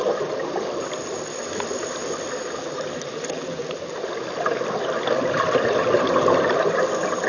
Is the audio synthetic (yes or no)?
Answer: no